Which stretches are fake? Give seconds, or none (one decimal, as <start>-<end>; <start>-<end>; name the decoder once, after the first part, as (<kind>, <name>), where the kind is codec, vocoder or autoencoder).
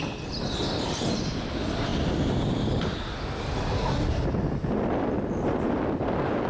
none